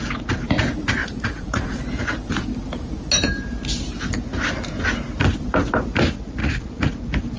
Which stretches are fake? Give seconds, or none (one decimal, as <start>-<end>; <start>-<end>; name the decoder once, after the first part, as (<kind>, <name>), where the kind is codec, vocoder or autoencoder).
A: 1.0-1.8 (vocoder, Vocos); 6.4-6.9